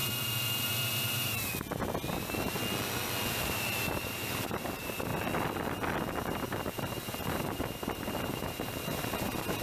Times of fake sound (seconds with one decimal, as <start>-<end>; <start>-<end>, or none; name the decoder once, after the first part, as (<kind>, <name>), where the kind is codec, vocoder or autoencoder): 0.0-1.5 (vocoder, BigVGAN v2); 2.1-2.6; 3.3-5.1; 6.2-9.6